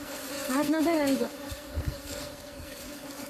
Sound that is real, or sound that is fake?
fake